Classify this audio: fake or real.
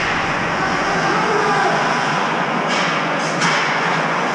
fake